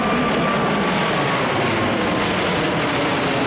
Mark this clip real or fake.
real